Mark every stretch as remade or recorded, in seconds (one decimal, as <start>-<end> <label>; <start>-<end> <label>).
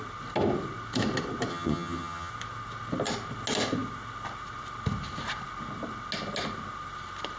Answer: 0.0-1.5 recorded; 1.5-2.3 remade; 2.3-7.4 recorded